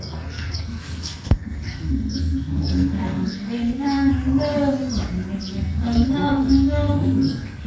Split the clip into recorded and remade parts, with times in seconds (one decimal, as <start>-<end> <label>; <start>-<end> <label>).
0.0-4.1 remade; 4.1-5.4 recorded; 5.4-7.7 remade